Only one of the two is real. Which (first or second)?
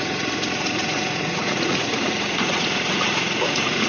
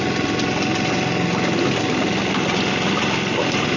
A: second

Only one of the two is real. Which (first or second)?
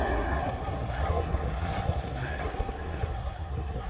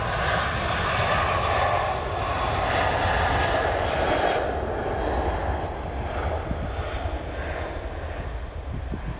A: second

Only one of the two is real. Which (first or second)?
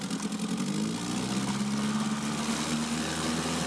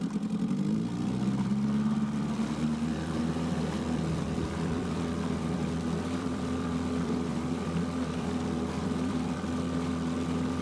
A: first